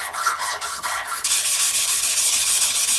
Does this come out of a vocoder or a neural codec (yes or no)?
yes